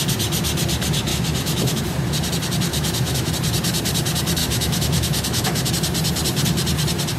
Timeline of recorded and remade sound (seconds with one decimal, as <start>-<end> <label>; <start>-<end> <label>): 0.0-1.1 recorded; 1.1-1.8 remade; 1.8-2.7 recorded; 2.7-3.3 remade; 3.3-4.4 recorded; 4.4-5.7 remade; 5.7-7.2 recorded